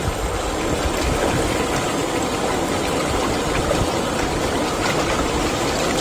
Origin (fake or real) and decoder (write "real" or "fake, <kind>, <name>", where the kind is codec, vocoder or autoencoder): real